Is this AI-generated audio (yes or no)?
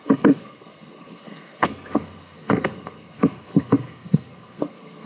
yes